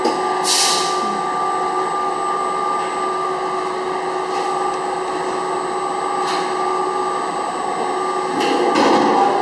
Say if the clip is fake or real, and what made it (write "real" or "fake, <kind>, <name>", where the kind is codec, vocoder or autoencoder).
real